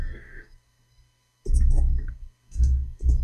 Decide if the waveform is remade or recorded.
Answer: remade